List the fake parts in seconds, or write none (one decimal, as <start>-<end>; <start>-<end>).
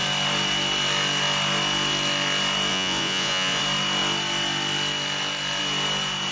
2.7-3.6